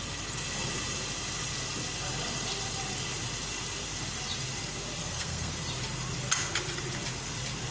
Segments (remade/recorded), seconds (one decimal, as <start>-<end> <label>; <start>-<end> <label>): 0.0-5.0 recorded; 5.0-5.5 remade; 5.5-7.7 recorded